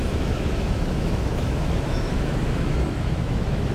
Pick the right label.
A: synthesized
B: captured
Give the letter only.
A